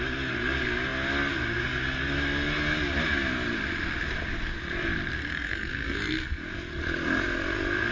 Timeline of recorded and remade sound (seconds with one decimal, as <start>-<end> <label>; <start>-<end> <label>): 0.0-5.3 recorded; 5.3-6.4 remade; 6.4-7.9 recorded